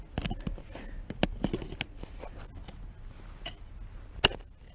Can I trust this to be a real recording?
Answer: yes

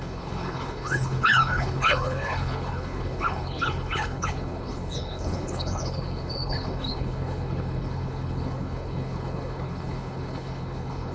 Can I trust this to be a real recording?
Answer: no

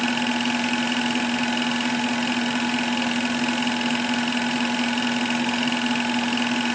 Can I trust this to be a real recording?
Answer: yes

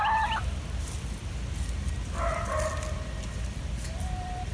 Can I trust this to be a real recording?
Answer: yes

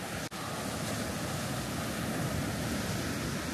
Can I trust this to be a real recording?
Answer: yes